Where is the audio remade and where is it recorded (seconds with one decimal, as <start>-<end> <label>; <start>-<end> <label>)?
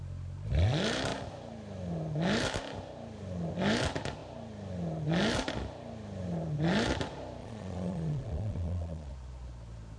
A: 0.0-7.4 recorded; 7.4-9.1 remade; 9.1-10.0 recorded